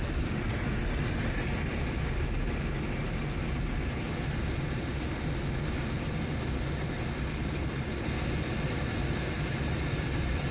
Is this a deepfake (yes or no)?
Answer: no